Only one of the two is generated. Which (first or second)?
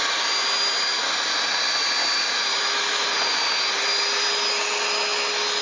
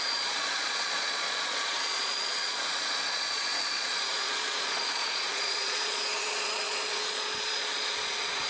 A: second